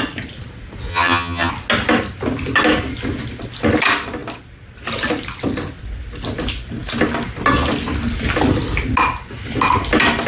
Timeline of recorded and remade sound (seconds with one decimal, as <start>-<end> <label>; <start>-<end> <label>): 0.0-0.9 recorded; 0.9-1.5 remade; 1.5-10.3 recorded